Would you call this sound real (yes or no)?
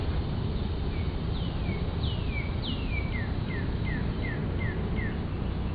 yes